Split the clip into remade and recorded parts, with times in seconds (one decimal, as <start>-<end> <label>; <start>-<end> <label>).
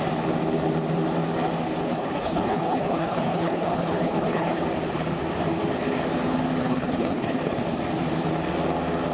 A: 0.0-1.8 recorded; 1.8-4.6 remade; 4.6-6.6 recorded; 6.6-7.6 remade; 7.6-9.1 recorded